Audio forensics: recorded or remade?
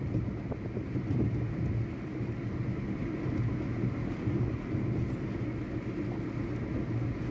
recorded